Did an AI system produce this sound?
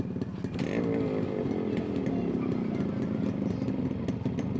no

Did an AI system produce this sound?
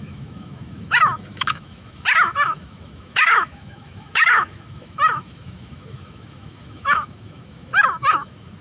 yes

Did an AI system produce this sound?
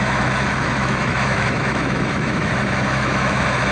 yes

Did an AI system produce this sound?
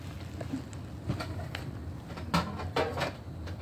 no